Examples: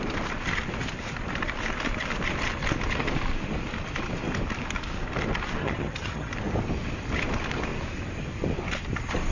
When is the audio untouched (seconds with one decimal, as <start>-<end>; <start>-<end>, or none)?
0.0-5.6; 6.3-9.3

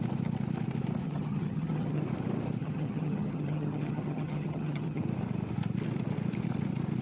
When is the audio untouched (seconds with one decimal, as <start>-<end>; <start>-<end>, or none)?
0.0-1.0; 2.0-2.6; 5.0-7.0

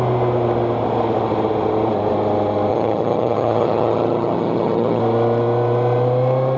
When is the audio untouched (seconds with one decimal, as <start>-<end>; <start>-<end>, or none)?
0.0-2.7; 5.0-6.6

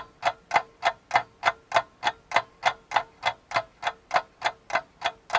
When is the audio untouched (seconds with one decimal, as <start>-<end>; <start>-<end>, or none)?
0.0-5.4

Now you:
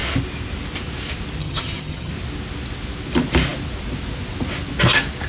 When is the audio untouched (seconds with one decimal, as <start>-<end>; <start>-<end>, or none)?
0.0-1.4; 2.1-5.3

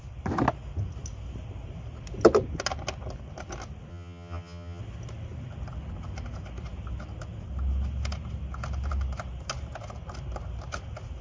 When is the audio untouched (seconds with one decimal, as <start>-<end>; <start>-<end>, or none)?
0.0-3.9; 4.8-11.2

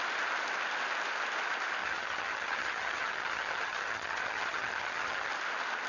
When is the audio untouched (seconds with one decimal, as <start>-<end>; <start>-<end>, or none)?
0.0-1.8; 5.3-5.9

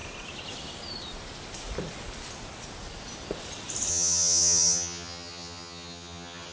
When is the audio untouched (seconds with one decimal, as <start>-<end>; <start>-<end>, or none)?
0.0-3.9